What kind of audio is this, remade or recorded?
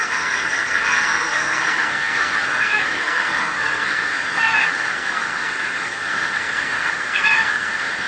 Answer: remade